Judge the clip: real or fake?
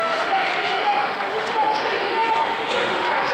fake